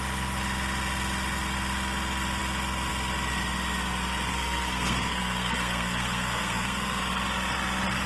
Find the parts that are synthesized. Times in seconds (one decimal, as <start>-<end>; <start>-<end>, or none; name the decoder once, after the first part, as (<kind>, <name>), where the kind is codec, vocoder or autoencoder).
4.3-7.0 (codec, SNAC)